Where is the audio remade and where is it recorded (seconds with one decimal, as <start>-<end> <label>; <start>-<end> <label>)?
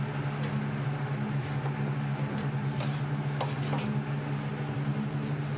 0.0-2.1 recorded; 2.1-3.2 remade; 3.2-4.5 recorded; 4.5-5.6 remade